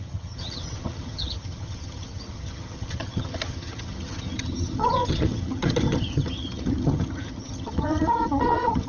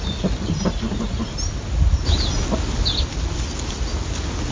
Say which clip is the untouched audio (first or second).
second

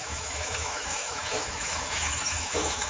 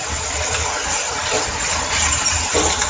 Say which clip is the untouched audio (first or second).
second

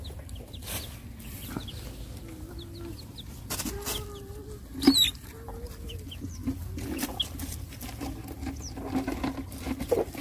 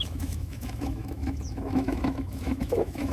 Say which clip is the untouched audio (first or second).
first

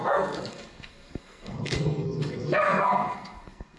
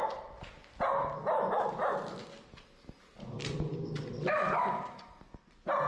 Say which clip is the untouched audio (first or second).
second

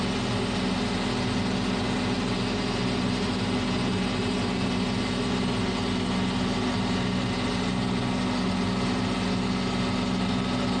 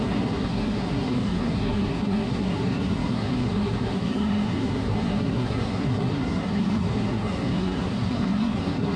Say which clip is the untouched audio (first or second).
first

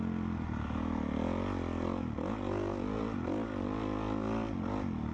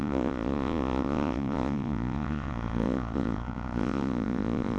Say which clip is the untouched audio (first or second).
first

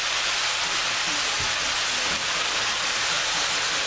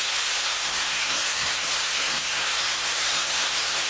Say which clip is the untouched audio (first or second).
first